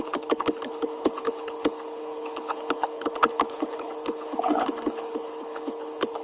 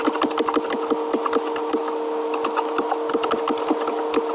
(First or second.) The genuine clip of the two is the second